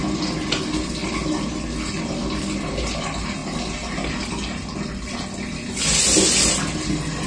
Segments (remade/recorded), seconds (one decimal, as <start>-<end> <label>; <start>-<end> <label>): 0.0-7.3 recorded